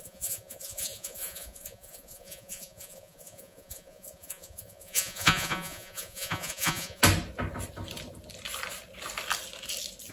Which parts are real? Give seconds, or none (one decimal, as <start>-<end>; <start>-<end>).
7.0-10.1